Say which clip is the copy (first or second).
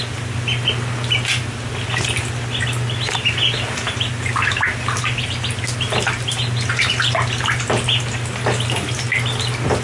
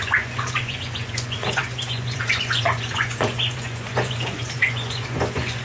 second